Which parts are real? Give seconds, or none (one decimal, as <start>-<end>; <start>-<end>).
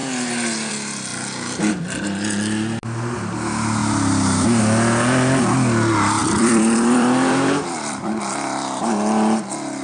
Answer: 0.0-3.8; 4.6-6.2; 8.8-9.8